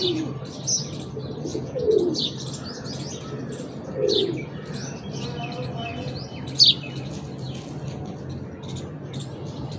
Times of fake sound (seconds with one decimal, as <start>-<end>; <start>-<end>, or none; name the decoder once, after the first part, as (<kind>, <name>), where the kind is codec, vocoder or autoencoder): 1.5-2.0 (vocoder, Vocos)